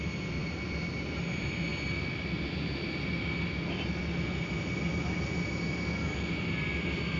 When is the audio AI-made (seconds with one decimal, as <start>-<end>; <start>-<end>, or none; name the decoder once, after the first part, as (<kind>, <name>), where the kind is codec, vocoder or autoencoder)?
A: 0.4-1.2 (vocoder, BigVGAN v2)